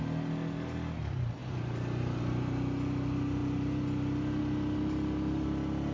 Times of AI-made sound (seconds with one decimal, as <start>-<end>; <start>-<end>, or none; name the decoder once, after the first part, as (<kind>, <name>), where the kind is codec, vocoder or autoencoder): none